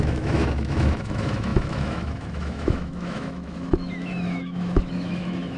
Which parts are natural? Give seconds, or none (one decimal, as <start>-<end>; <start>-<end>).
none